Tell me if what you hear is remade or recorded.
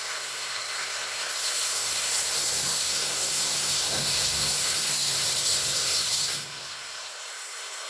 remade